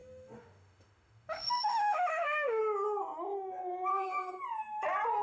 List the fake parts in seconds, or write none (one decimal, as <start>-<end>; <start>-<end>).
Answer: 0.0-2.6; 3.9-4.4